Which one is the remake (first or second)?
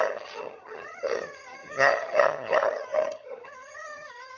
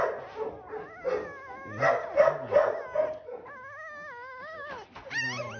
first